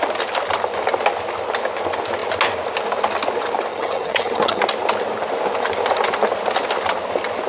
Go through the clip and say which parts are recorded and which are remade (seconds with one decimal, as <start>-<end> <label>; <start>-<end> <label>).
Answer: 0.0-3.7 recorded; 3.7-4.6 remade; 4.6-7.5 recorded